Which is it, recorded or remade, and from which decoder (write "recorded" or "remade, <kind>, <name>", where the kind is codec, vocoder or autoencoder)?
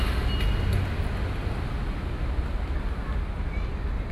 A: recorded